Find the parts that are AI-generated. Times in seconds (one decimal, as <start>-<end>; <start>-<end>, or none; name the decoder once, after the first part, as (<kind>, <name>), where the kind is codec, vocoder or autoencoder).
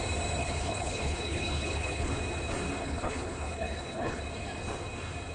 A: 0.4-2.1 (codec, HILCodec); 2.8-4.2